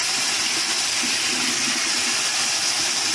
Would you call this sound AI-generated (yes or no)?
no